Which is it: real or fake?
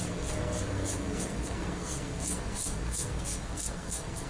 fake